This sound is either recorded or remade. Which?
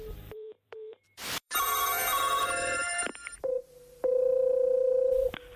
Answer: remade